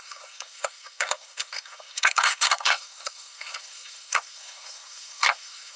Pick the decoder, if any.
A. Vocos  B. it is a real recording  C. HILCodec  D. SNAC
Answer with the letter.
D